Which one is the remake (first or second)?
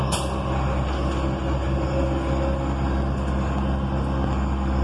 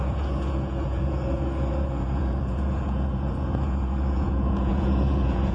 second